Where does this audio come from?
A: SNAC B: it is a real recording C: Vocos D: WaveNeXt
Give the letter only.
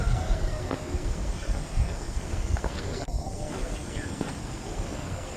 A